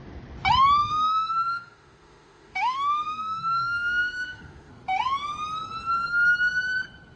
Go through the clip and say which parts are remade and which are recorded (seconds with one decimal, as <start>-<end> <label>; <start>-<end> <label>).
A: 0.0-0.8 recorded; 0.8-4.7 remade; 4.7-7.2 recorded